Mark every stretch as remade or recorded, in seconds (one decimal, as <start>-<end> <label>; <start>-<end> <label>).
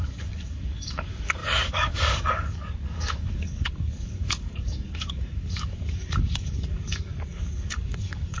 0.0-8.4 remade